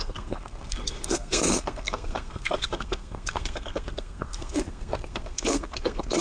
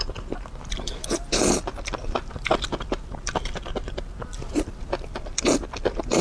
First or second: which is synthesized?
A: first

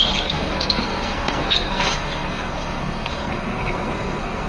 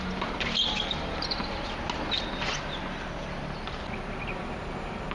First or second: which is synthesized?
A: first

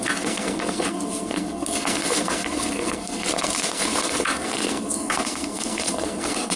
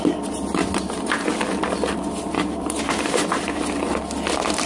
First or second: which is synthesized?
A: first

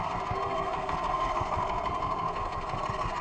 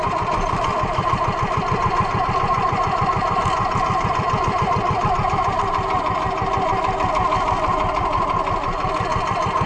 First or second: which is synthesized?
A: first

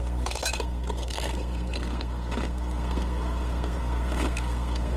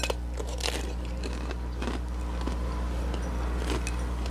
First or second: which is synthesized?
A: first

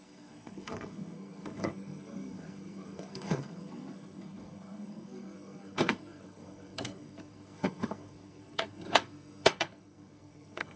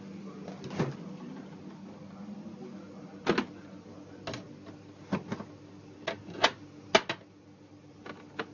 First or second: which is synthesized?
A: first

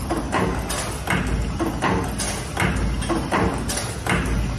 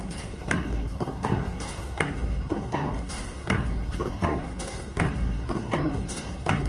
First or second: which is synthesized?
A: second